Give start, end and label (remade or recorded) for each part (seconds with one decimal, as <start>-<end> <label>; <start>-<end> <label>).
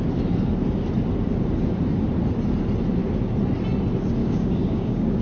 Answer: 0.0-4.2 recorded; 4.2-5.2 remade